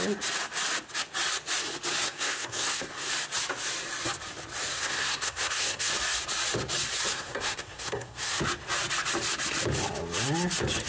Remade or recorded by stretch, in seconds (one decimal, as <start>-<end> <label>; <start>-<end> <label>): 0.0-2.0 recorded; 2.0-3.1 remade; 3.1-4.7 recorded; 4.7-5.9 remade; 5.9-7.1 recorded; 7.1-8.4 remade; 8.4-10.9 recorded